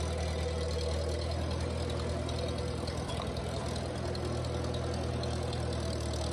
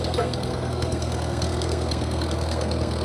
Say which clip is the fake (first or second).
second